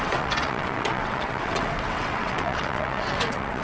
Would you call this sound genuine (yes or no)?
no